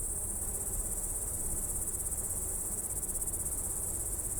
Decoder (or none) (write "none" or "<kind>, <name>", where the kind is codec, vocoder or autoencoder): none